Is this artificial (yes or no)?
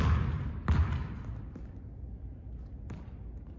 no